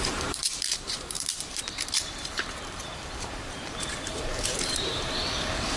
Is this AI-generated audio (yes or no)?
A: yes